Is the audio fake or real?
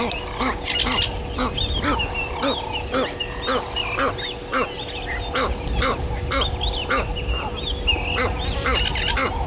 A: real